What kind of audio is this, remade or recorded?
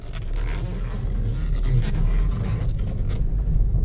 recorded